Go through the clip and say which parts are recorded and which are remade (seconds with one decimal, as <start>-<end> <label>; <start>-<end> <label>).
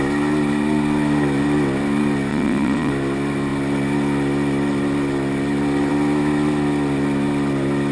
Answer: 0.0-2.3 recorded; 2.3-2.9 remade; 2.9-7.9 recorded